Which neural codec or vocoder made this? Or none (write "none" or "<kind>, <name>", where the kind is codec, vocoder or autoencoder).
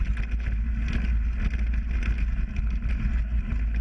none